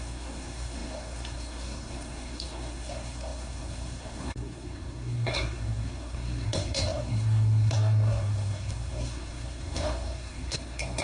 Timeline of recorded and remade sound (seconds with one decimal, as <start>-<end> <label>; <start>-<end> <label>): 0.0-11.0 remade